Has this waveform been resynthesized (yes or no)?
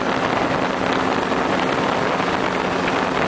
no